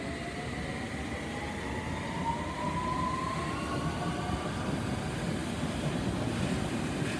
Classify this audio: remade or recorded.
recorded